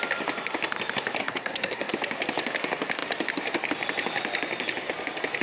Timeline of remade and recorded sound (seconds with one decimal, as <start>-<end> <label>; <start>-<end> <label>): 0.0-1.2 recorded; 1.2-1.9 remade; 1.9-5.4 recorded